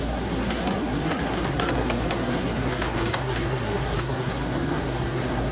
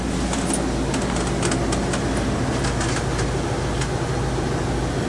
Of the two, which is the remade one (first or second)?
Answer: first